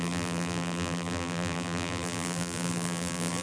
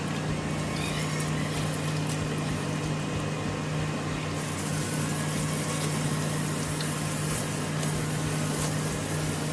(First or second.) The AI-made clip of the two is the first